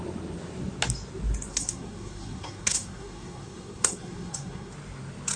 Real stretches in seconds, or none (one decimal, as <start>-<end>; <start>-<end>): 0.0-1.5; 4.7-5.4